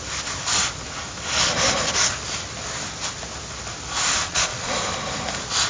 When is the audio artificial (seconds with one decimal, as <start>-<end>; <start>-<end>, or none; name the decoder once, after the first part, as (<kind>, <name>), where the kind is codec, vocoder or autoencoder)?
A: 4.2-4.7 (vocoder, Vocos)